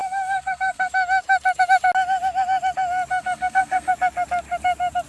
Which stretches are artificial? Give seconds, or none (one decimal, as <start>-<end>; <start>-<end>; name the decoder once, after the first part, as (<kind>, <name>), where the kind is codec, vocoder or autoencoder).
0.0-0.9 (codec, SNAC); 3.1-3.9